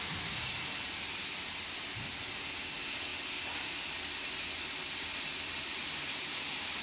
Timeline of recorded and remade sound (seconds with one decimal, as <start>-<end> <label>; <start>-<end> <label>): 0.0-6.8 remade